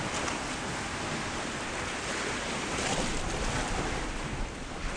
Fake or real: real